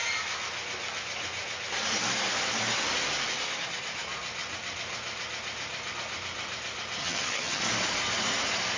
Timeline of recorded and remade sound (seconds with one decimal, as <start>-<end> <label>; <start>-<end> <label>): 0.0-7.0 recorded; 7.0-7.6 remade; 7.6-8.8 recorded